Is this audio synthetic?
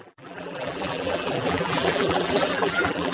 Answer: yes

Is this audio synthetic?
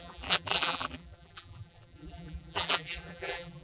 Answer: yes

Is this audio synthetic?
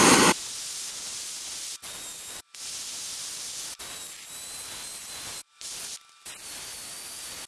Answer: no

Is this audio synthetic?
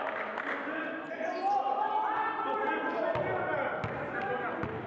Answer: no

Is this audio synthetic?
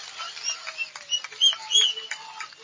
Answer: no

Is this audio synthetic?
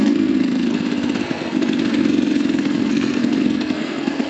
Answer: yes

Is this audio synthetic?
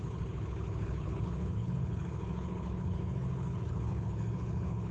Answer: yes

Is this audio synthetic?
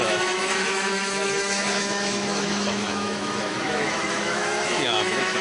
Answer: yes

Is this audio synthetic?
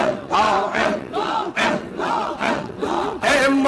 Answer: yes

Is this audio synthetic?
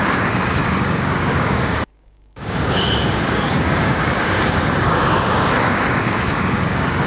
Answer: yes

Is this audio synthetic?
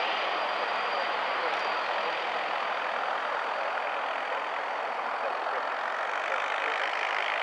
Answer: no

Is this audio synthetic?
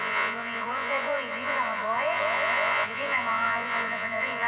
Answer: yes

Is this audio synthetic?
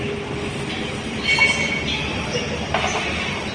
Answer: no